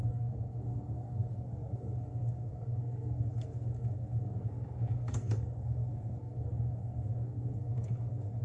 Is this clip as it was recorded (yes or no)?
no